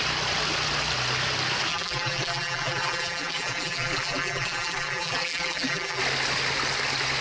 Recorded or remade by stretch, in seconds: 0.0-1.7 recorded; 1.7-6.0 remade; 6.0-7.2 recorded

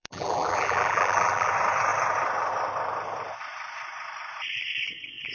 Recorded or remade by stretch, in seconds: 0.0-1.5 remade; 1.5-5.3 recorded

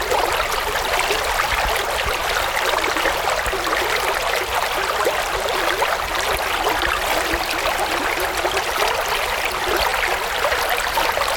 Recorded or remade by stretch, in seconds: 0.0-2.2 recorded; 2.2-3.1 remade; 3.1-9.9 recorded; 9.9-10.9 remade; 10.9-11.4 recorded

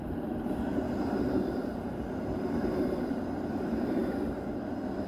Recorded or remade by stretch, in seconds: 0.0-4.0 remade; 4.0-5.1 recorded